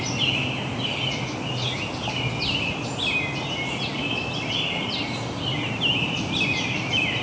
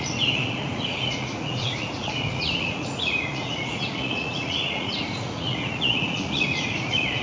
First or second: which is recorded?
first